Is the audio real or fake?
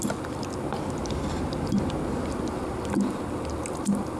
real